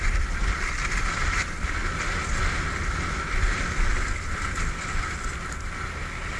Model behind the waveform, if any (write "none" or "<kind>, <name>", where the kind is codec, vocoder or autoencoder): none